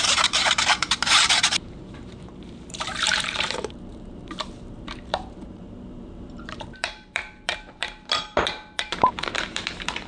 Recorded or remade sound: remade